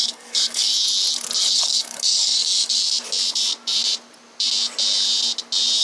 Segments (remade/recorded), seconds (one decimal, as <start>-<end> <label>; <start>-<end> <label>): 0.0-0.7 remade; 0.7-1.4 recorded; 1.4-2.8 remade; 2.8-5.8 recorded